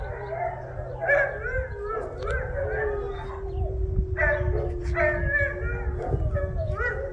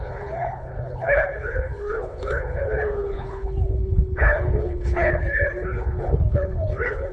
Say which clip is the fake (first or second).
second